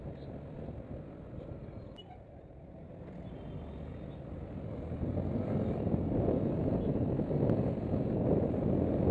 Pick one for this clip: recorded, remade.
recorded